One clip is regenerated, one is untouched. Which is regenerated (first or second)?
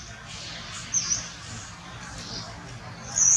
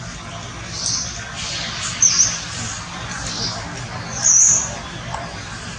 second